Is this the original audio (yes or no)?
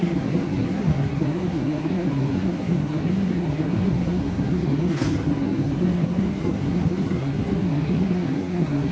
no